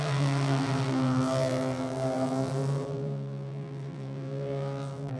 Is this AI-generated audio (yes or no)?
yes